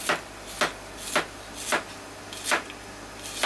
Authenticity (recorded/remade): recorded